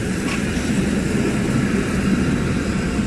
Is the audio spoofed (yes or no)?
no